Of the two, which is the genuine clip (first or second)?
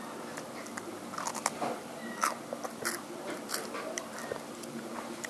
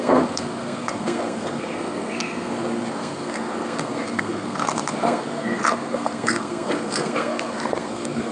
first